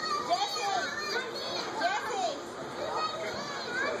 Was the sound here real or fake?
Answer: fake